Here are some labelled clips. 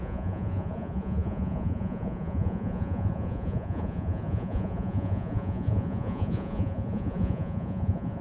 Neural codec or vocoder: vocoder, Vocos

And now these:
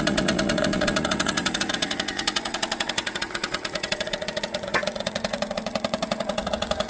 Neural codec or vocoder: vocoder, Vocos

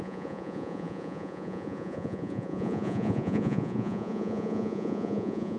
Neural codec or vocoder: vocoder, Vocos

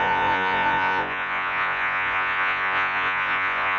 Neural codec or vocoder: vocoder, Vocos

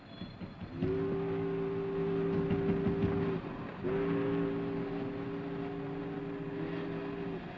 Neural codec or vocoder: none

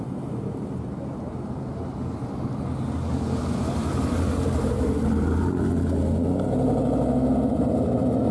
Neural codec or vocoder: none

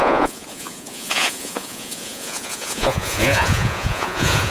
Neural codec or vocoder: vocoder, Vocos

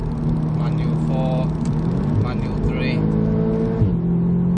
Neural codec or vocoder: none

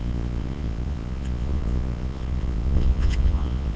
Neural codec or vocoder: vocoder, Vocos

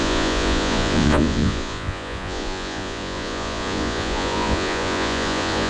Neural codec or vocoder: vocoder, Vocos